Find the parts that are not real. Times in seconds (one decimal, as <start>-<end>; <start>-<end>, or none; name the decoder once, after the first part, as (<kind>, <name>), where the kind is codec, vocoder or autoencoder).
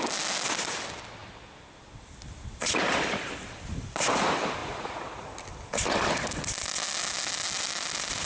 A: 4.6-5.3 (vocoder, Vocos)